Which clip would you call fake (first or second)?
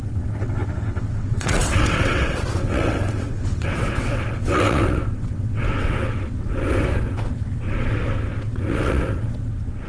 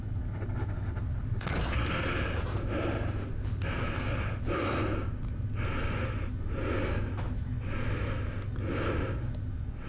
first